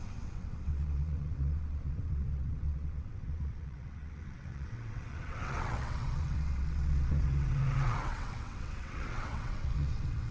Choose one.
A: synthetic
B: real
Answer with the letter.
A